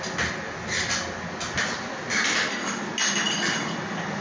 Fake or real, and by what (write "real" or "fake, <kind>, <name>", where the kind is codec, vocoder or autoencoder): real